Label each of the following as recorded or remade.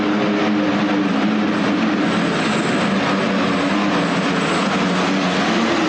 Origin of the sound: recorded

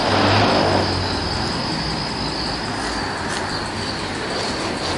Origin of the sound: recorded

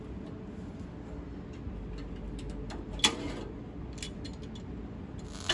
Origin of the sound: recorded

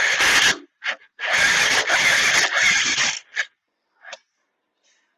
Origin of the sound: recorded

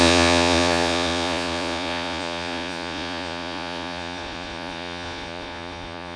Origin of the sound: remade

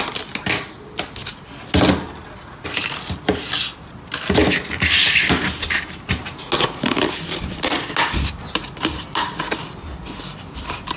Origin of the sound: recorded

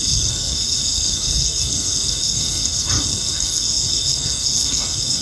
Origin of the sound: remade